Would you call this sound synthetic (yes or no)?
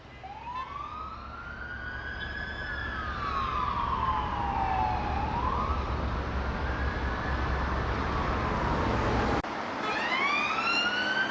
no